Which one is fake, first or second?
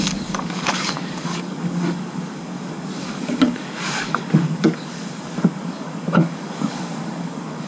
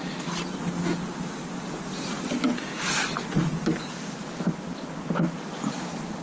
first